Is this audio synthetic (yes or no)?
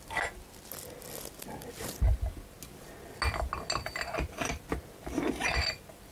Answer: no